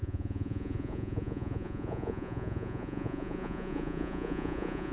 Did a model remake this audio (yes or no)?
yes